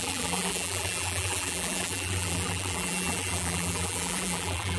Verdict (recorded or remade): remade